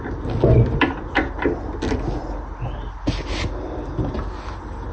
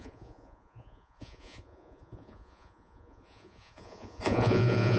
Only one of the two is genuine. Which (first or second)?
first